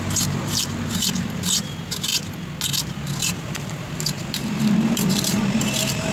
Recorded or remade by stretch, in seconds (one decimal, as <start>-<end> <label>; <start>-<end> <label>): 0.0-2.1 remade; 2.1-3.2 recorded; 3.2-6.1 remade